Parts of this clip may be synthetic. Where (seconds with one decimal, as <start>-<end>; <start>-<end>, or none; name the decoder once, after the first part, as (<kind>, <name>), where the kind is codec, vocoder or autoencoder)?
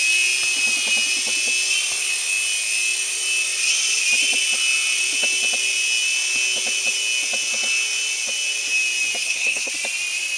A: 9.2-9.7 (codec, SNAC)